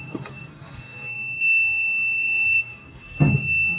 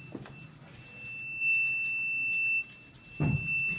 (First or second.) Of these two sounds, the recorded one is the second